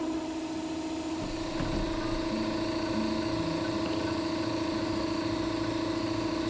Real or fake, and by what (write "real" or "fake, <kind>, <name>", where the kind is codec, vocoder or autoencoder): real